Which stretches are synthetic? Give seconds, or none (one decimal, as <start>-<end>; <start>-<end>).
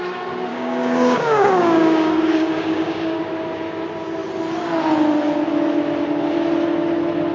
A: 0.5-3.2